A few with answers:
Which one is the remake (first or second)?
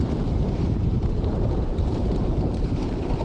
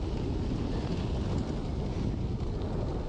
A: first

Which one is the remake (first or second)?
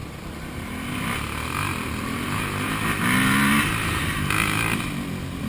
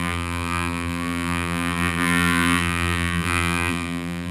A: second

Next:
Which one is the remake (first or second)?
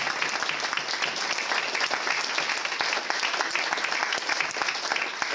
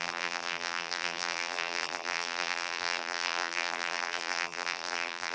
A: second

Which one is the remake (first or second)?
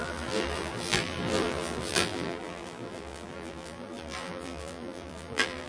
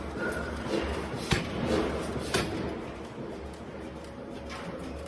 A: first